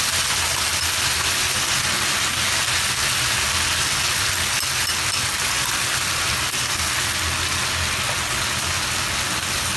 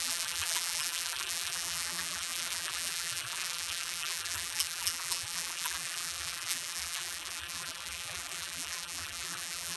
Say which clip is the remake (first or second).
second